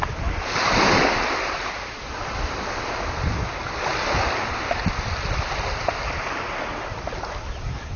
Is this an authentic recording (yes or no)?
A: yes